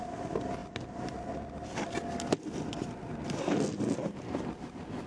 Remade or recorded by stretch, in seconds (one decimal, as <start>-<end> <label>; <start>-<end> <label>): 0.0-5.1 recorded